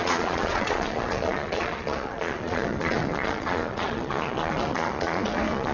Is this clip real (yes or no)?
no